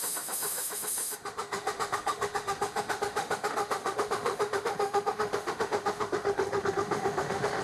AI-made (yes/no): yes